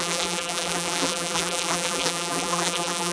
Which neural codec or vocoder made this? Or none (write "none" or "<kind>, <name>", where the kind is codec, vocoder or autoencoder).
vocoder, BigVGAN v2